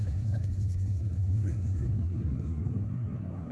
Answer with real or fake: fake